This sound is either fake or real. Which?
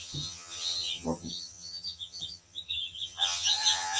fake